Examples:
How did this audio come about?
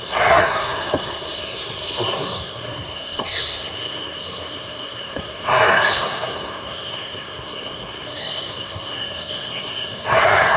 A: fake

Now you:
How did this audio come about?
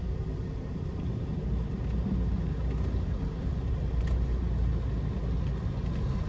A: real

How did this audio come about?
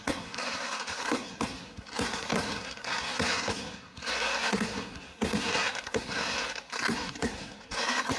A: fake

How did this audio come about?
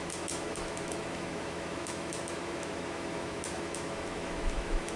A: fake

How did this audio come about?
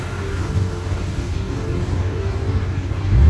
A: fake